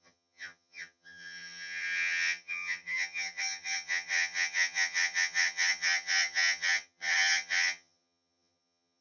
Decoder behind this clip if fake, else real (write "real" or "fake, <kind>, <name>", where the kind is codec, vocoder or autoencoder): fake, vocoder, HiFi-GAN